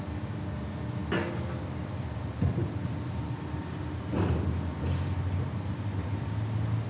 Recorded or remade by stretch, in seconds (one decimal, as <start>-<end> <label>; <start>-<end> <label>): 0.0-6.9 recorded